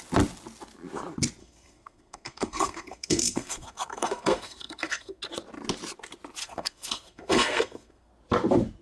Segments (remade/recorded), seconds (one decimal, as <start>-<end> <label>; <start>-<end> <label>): 0.0-1.4 recorded; 1.4-5.2 remade; 5.2-6.4 recorded; 6.4-8.1 remade; 8.1-8.8 recorded